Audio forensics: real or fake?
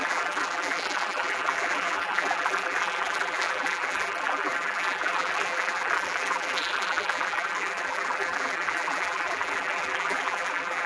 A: fake